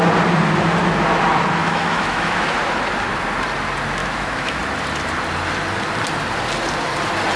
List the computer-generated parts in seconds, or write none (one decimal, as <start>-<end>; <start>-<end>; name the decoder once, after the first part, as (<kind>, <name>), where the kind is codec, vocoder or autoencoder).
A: 1.6-2.6 (autoencoder, DAC-VAE); 4.0-4.6